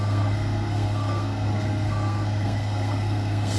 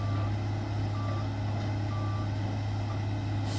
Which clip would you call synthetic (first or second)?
first